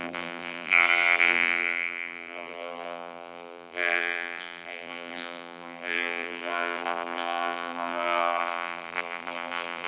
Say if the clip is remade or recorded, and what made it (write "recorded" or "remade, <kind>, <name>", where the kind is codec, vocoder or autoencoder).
remade, vocoder, BigVGAN v2